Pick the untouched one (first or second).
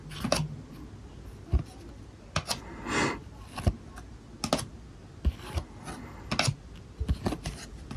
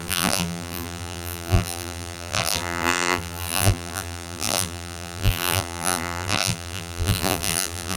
first